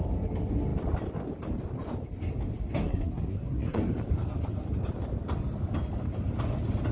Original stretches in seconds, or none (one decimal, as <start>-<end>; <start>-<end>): 0.0-2.8; 3.8-6.9